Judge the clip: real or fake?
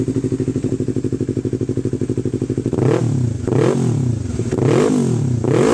real